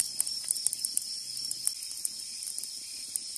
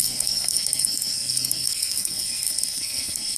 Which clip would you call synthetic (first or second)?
second